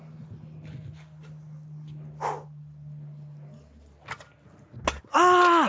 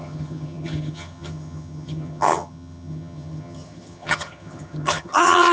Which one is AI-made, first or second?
second